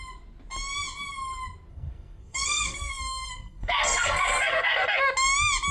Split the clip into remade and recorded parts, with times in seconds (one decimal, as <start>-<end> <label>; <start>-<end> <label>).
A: 0.0-1.7 recorded; 1.7-5.0 remade; 5.0-5.7 recorded